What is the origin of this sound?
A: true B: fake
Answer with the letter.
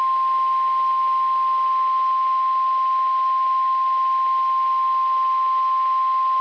A